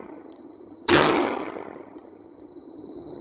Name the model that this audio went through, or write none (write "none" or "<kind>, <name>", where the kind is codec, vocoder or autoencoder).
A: vocoder, HiFi-GAN